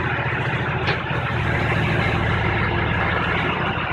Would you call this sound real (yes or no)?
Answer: yes